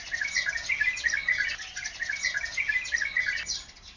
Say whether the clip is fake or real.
real